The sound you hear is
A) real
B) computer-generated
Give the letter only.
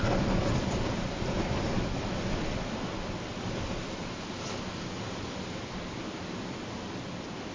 A